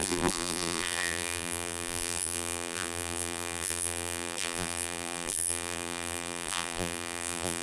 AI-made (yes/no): yes